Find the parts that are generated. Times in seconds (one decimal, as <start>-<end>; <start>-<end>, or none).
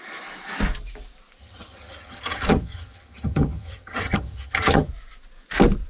1.4-4.9